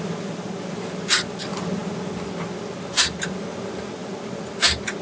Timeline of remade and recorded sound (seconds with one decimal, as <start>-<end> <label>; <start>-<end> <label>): 0.0-5.0 recorded